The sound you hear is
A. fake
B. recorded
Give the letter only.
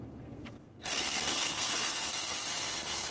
A